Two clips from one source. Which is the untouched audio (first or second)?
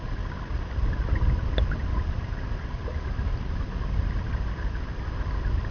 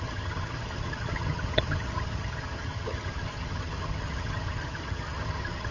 first